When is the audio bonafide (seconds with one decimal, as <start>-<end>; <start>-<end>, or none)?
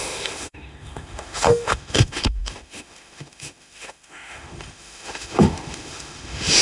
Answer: none